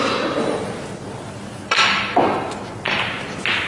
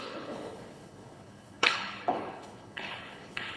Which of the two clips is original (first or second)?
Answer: first